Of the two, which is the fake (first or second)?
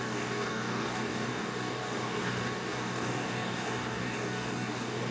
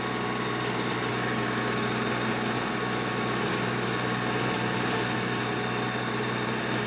first